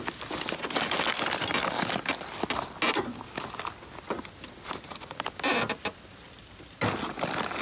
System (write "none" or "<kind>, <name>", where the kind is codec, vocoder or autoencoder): none